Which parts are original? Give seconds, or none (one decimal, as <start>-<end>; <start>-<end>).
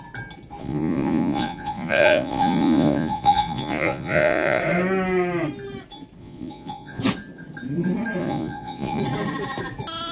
0.0-0.6; 4.6-6.2; 7.0-8.2; 9.0-10.1